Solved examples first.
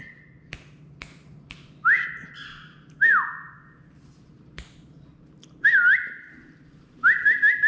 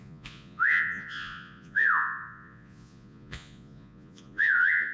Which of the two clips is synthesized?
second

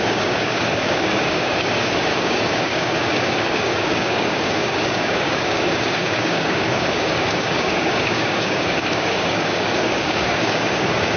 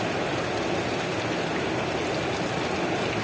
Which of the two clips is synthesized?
first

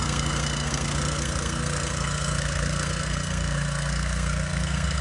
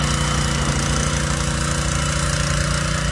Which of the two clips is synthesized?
first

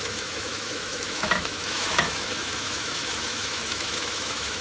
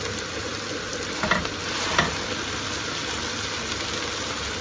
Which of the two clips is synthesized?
first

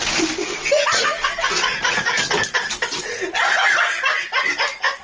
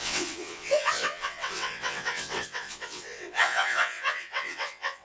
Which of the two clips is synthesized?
second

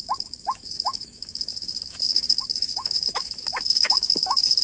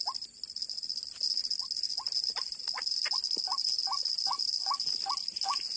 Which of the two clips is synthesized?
first